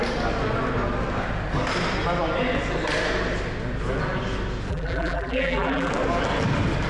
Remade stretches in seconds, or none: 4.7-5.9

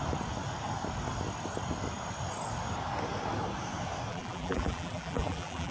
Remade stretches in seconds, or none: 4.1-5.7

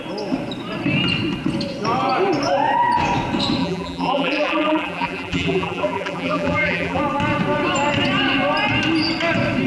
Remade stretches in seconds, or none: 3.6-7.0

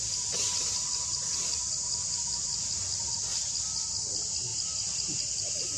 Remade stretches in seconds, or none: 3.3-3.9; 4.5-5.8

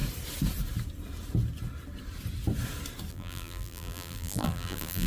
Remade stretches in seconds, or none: 3.1-5.1